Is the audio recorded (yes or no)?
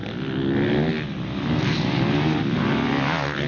yes